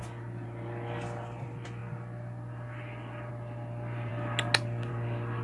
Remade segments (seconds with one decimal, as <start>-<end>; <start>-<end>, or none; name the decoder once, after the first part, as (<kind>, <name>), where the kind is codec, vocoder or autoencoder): none